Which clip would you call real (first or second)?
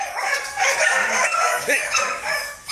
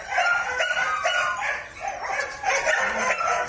second